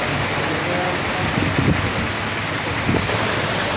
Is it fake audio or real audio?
real